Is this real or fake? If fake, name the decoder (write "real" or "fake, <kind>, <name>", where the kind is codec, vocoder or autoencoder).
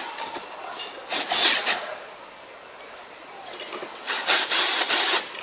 real